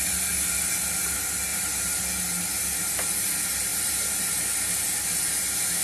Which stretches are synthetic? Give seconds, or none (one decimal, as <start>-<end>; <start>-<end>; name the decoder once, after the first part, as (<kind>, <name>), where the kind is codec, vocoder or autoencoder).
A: 1.5-2.0 (vocoder, BigVGAN v2); 3.7-4.4